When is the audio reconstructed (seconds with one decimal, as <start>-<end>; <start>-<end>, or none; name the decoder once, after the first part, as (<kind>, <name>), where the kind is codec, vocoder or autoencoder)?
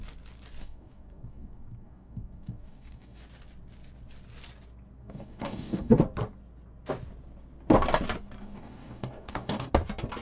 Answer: 0.6-3.2 (codec, DAC); 5.0-6.0; 8.4-9.7